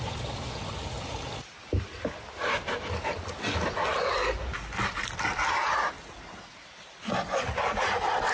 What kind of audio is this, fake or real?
real